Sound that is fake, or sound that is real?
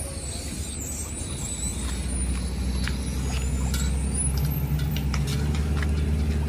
real